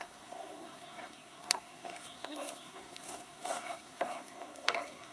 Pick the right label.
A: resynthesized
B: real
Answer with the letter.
A